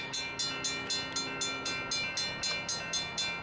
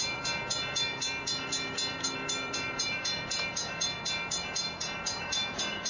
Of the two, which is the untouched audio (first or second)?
first